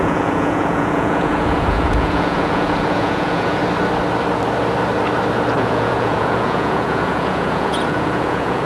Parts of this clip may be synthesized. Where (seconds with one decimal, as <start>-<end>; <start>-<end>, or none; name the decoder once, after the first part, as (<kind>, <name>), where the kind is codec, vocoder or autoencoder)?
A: 0.0-3.6 (vocoder, Vocos); 5.6-8.7